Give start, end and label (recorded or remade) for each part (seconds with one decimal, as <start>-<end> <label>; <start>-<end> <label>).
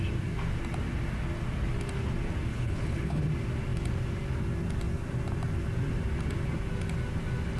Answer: 0.0-2.5 recorded; 2.5-3.2 remade; 3.2-7.6 recorded